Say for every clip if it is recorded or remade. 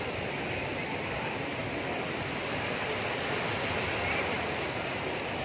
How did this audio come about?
recorded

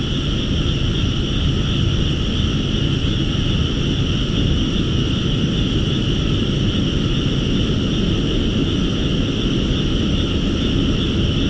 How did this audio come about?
recorded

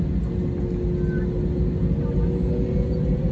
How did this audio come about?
recorded